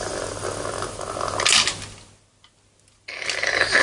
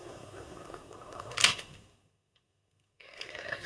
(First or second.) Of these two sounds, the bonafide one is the first